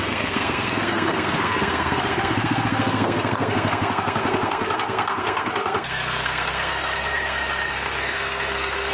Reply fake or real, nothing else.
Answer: fake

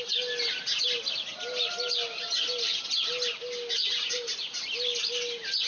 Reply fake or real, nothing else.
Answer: real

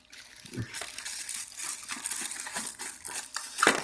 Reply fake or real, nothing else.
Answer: real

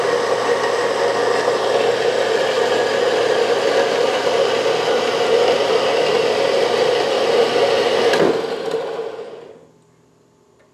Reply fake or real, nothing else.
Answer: real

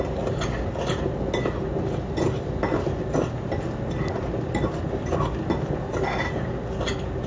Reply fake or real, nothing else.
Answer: real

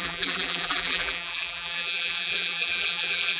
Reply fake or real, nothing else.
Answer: fake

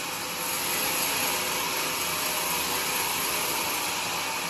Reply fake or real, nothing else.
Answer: real